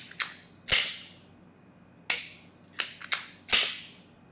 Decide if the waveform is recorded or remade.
recorded